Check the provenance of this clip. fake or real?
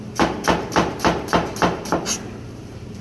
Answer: fake